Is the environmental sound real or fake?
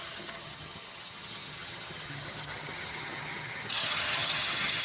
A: fake